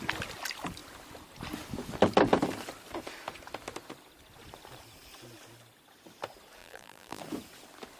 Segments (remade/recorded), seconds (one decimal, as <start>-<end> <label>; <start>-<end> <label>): 0.0-6.6 recorded; 6.6-7.2 remade; 7.2-8.0 recorded